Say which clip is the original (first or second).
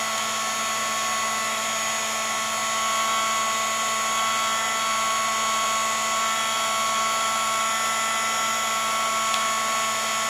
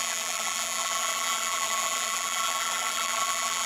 first